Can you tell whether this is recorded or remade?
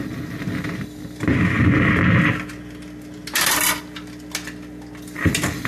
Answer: recorded